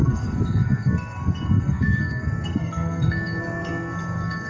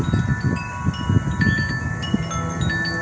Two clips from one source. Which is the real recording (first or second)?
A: second